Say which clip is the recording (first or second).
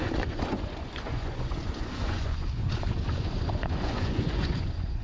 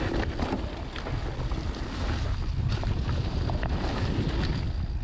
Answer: second